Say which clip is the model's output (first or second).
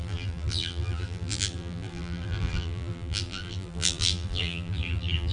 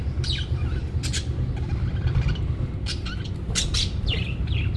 first